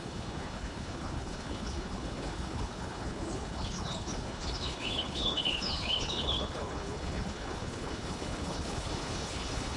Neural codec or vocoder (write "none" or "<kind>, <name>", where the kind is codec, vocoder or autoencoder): codec, HILCodec